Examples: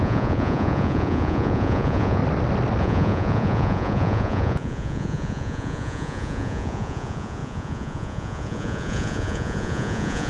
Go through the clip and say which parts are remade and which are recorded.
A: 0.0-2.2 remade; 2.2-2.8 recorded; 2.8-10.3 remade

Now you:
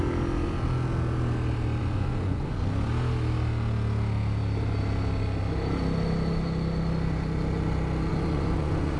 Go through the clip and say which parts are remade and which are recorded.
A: 0.0-1.8 recorded; 1.8-2.5 remade; 2.5-8.1 recorded; 8.1-9.0 remade

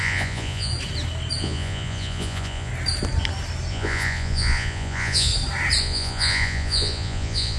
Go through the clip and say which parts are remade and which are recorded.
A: 0.0-0.7 remade; 0.7-1.4 recorded; 1.4-2.7 remade; 2.7-3.7 recorded; 3.7-5.3 remade; 5.3-5.8 recorded; 5.8-7.6 remade

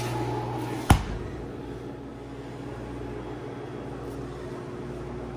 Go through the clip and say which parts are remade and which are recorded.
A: 0.0-5.4 recorded

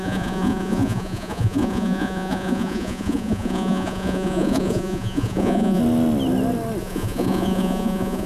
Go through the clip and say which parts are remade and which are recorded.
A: 0.0-5.8 remade; 5.8-6.8 recorded; 6.8-8.3 remade

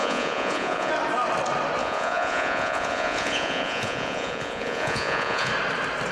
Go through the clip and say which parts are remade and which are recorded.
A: 0.0-0.9 remade; 0.9-1.8 recorded; 1.8-5.5 remade; 5.5-6.1 recorded